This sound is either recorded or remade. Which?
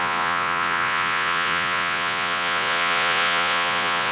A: remade